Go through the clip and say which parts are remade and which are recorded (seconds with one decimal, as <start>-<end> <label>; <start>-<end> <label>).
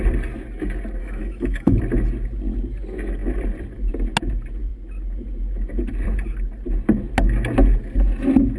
0.0-1.0 recorded; 1.0-1.8 remade; 1.8-8.6 recorded